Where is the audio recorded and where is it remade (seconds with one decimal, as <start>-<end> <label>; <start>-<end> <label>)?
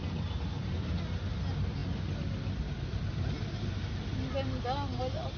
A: 0.0-5.4 recorded